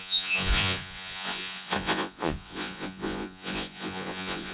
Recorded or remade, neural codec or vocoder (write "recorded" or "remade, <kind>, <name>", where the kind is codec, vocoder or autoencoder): remade, vocoder, Vocos